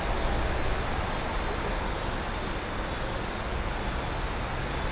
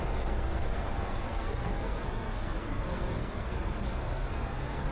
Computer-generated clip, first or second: second